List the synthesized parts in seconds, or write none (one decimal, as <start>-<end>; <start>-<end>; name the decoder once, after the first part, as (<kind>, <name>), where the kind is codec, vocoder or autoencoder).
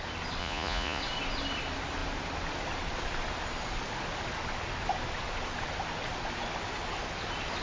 0.4-1.0 (vocoder, Vocos)